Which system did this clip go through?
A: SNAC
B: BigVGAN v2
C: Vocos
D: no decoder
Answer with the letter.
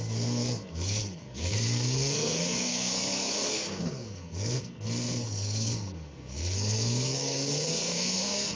A